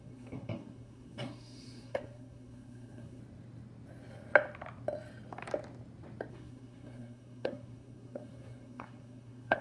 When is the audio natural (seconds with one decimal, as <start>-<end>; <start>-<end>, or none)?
3.2-6.3